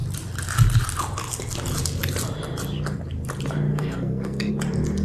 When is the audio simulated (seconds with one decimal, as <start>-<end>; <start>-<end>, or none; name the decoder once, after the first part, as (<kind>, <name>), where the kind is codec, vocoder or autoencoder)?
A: 3.7-4.5 (codec, SNAC)